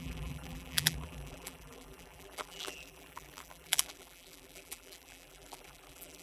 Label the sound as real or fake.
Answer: fake